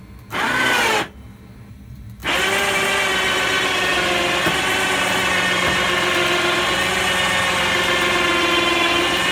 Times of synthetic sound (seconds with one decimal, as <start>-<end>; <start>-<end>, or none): none